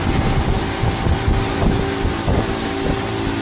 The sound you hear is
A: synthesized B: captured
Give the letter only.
B